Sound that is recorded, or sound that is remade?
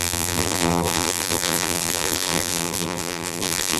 remade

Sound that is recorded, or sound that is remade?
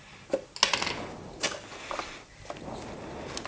recorded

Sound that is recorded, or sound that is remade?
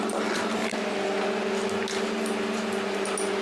recorded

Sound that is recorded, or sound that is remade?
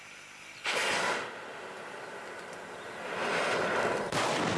recorded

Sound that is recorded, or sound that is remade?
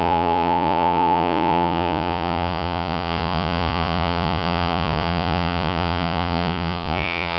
remade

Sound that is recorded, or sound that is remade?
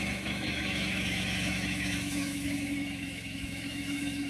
remade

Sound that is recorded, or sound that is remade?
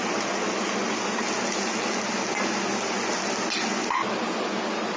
recorded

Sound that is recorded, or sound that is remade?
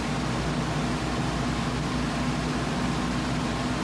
recorded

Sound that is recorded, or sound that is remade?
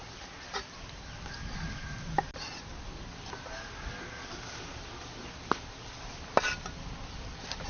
recorded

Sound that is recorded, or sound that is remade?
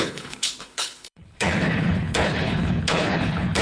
remade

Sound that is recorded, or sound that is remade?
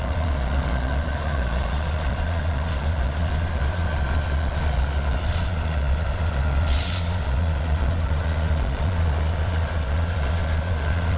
remade